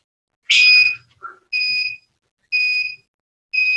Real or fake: real